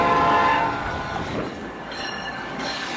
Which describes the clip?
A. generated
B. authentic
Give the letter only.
A